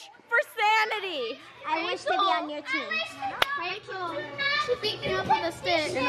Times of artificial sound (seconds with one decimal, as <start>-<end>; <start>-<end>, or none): 3.7-5.1